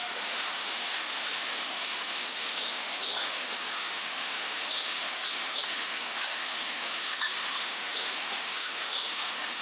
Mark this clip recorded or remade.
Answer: remade